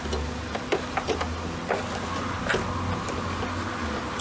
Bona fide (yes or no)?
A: yes